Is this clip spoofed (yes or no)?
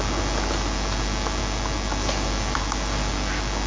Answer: no